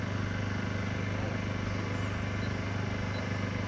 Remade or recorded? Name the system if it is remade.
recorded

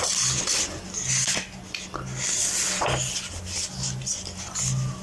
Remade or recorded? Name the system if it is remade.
recorded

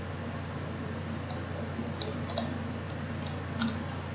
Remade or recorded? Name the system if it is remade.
recorded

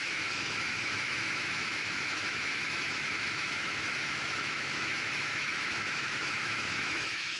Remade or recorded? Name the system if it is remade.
remade, autoencoder, DAC-VAE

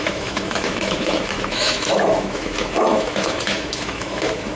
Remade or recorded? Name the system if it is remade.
remade, autoencoder, DAC-VAE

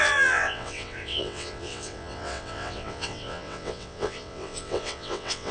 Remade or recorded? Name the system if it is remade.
remade, vocoder, WaveNeXt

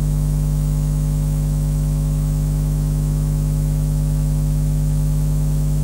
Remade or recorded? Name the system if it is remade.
remade, autoencoder, DAC-VAE